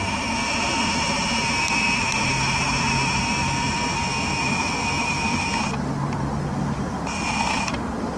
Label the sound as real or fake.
real